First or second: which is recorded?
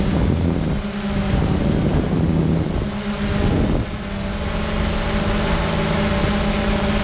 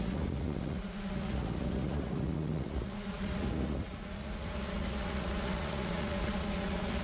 first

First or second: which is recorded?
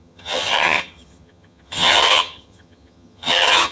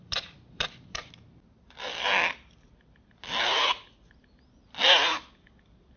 second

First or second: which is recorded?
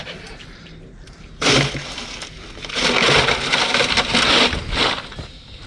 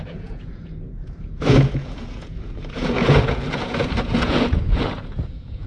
first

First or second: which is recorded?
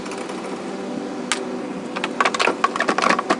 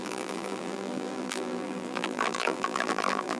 first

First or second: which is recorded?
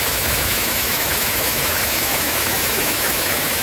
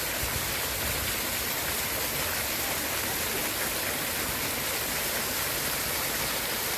second